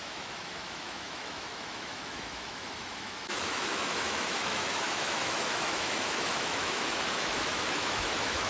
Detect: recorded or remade remade